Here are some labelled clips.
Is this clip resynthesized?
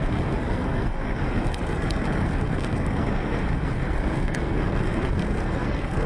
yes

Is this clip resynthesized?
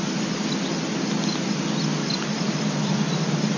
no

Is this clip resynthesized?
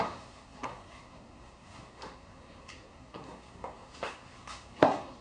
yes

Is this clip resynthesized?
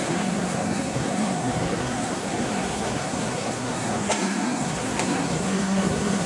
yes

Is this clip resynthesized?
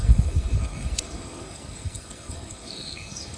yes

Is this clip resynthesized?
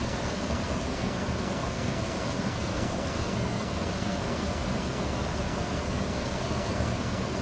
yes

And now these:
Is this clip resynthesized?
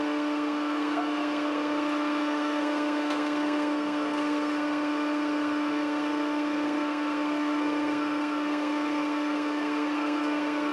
yes